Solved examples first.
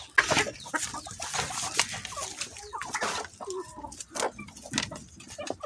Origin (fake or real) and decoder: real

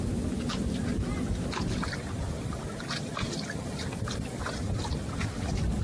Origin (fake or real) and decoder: real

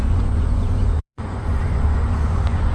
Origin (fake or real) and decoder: fake, vocoder, Vocos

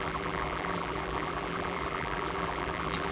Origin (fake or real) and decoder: fake, vocoder, BigVGAN v2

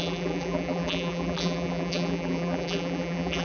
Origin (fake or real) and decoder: fake, vocoder, BigVGAN v2